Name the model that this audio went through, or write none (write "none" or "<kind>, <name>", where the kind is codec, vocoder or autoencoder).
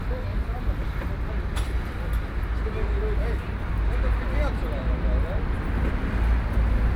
none